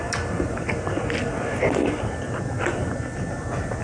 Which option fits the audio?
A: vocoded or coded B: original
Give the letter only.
B